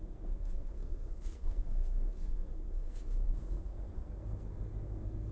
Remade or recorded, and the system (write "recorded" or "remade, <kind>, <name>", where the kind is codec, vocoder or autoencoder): remade, codec, SNAC